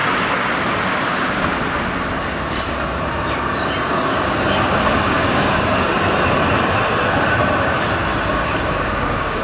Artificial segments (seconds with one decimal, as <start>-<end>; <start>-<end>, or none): 3.9-5.9; 8.3-9.4